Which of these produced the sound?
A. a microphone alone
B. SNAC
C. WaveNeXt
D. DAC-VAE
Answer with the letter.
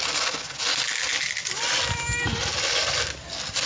A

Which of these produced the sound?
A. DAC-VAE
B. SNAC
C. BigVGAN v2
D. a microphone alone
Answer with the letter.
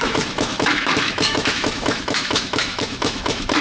A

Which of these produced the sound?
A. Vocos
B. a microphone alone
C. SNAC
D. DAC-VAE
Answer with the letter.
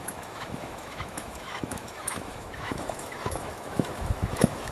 D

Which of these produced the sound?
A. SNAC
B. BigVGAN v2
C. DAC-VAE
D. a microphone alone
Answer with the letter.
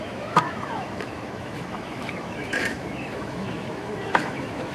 C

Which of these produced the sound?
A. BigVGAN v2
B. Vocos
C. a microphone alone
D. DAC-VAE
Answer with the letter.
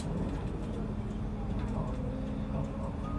C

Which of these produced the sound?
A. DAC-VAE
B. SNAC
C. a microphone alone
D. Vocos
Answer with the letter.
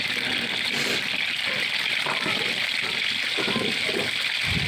C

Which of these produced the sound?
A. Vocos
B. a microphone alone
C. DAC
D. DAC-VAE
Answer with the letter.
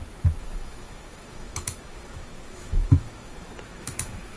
D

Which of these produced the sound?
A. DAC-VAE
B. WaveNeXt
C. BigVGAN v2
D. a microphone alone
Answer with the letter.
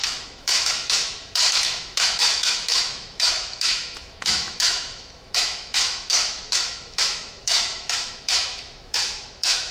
A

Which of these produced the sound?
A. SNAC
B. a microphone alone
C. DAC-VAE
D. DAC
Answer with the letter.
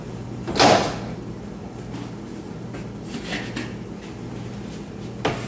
B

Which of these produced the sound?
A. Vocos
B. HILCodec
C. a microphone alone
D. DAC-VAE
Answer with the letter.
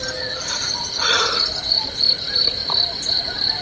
C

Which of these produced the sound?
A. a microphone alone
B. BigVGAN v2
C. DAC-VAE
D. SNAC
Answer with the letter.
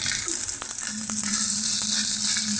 A